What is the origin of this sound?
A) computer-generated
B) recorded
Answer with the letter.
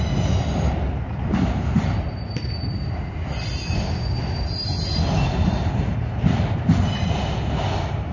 B